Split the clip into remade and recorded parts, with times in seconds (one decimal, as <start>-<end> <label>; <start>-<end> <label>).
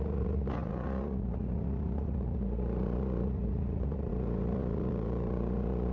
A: 0.0-5.9 remade